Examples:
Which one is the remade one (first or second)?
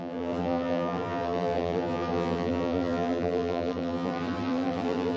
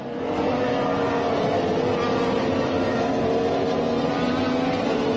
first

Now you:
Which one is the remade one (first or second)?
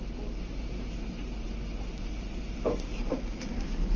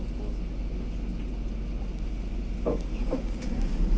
first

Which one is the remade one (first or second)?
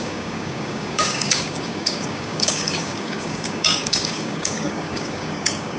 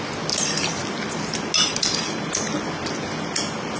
first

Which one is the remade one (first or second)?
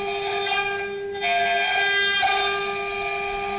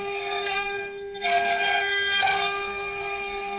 second